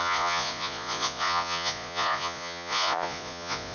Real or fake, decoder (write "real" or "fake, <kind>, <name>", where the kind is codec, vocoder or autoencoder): fake, vocoder, Vocos